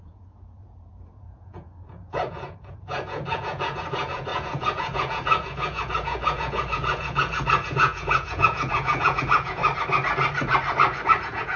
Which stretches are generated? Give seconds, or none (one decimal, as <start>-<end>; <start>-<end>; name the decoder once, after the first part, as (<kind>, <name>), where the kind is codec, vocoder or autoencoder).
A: 0.0-9.6 (vocoder, Vocos); 11.2-11.6